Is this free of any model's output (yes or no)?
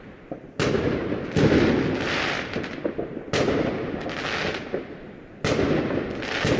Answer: yes